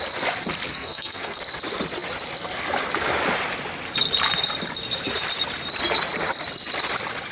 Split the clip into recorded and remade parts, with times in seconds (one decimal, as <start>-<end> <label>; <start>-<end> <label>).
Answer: 0.0-0.7 recorded; 0.7-1.4 remade; 1.4-7.3 recorded